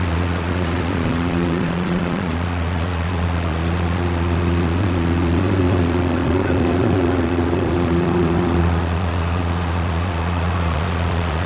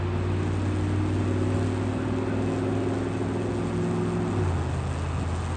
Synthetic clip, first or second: first